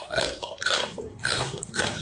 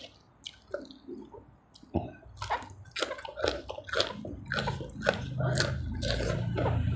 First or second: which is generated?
first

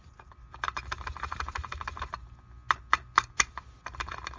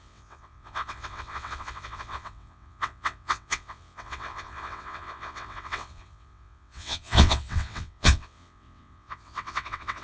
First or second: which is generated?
second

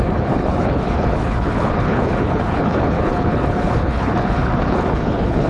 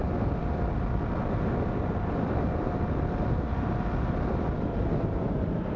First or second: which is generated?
first